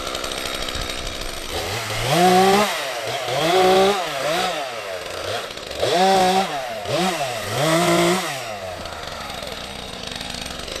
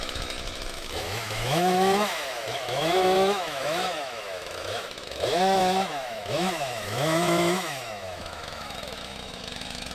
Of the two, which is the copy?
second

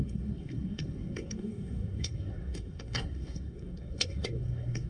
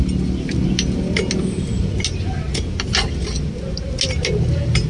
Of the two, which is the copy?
first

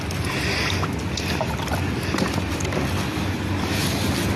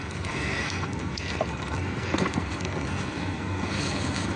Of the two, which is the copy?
second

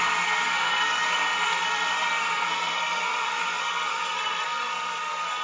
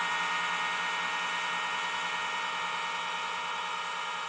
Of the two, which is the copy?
first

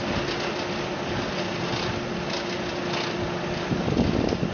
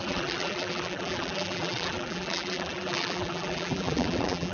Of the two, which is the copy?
second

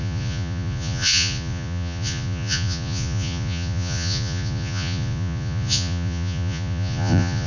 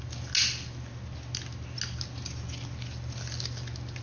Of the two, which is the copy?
first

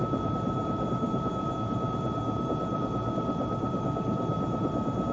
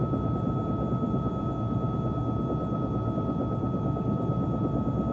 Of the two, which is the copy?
first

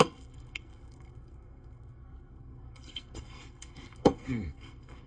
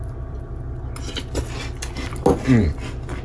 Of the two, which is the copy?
first